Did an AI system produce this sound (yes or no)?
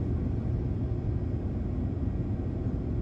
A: no